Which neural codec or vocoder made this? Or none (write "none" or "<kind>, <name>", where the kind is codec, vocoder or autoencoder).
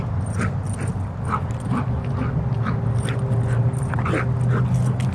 none